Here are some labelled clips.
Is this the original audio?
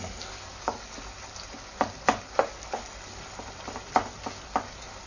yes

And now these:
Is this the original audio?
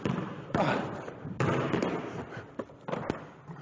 yes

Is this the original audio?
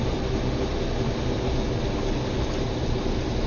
yes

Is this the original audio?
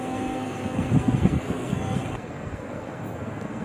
no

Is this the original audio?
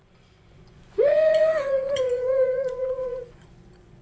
no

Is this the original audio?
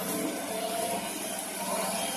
yes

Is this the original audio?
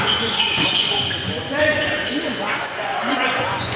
no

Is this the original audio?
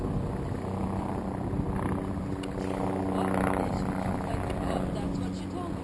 yes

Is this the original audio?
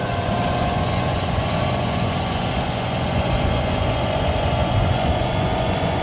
no